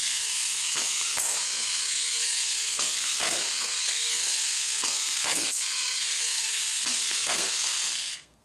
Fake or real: fake